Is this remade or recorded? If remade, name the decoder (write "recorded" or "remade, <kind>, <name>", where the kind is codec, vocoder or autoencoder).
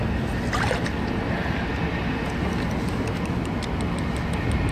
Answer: recorded